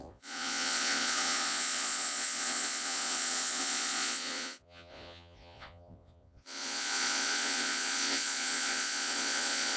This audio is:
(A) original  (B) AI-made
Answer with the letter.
B